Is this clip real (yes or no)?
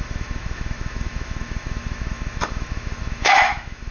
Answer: no